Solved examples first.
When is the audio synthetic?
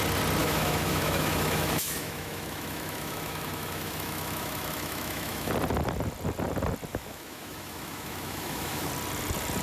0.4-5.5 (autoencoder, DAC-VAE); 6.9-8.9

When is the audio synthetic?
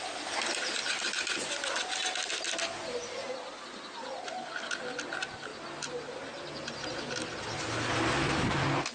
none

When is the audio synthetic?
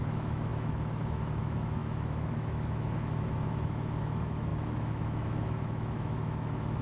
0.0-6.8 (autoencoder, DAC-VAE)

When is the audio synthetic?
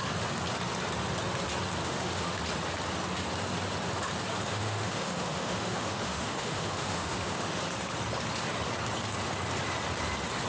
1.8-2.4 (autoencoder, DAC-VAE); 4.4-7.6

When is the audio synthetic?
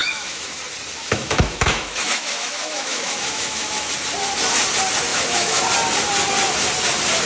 0.0-0.6 (autoencoder, DAC-VAE); 1.0-3.9; 5.1-5.6